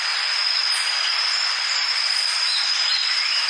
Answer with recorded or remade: remade